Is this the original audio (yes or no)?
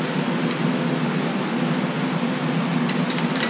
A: yes